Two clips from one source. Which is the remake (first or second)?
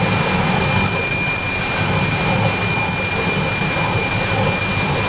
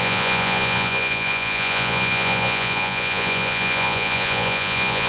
second